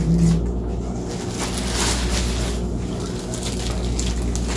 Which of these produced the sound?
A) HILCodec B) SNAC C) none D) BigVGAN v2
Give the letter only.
C